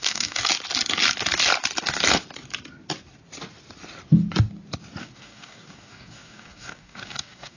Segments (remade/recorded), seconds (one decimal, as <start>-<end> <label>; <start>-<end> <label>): 0.0-0.4 remade; 0.4-5.0 recorded; 5.0-7.6 remade